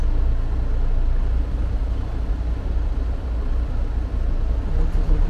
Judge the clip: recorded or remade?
recorded